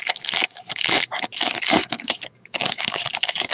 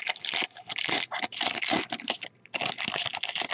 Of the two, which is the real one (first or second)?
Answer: second